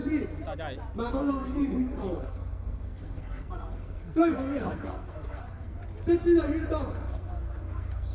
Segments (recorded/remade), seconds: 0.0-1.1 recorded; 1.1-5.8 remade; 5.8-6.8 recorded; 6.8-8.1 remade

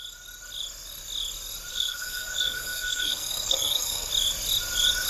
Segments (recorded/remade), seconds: 0.0-1.7 recorded; 1.7-4.1 remade; 4.1-5.1 recorded